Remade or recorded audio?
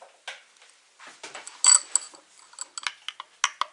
recorded